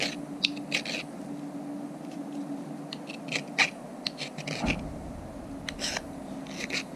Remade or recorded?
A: recorded